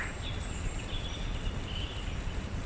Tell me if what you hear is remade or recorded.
recorded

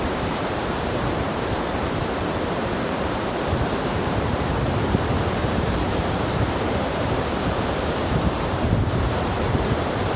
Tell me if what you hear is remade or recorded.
remade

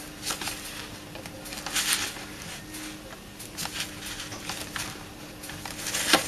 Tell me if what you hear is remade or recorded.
recorded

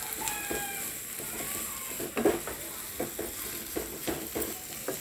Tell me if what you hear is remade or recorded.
recorded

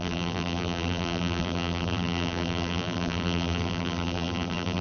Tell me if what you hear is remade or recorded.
remade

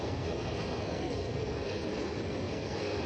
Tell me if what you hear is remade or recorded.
remade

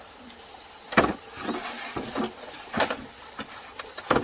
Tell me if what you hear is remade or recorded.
recorded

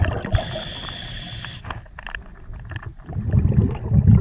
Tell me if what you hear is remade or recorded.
recorded